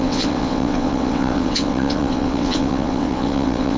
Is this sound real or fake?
fake